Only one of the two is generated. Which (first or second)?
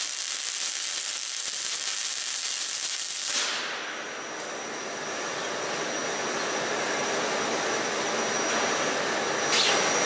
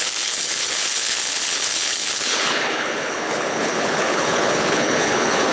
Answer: second